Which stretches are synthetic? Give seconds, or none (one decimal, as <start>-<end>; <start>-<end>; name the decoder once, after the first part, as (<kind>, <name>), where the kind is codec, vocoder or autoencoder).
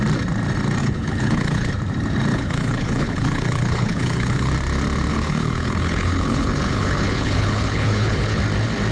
0.8-1.7 (codec, HILCodec); 2.3-4.5; 5.1-8.4